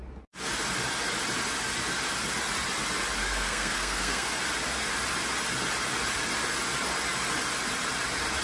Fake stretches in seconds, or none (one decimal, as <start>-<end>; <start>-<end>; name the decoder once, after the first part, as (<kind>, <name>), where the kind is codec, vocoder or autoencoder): 3.2-4.3 (codec, SNAC)